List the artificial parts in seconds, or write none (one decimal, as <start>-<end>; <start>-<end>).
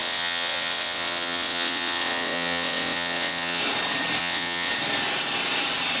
0.0-3.6; 4.2-4.7